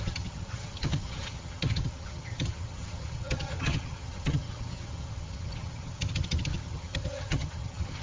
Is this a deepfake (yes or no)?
yes